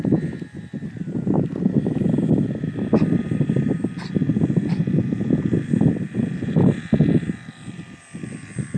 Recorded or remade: recorded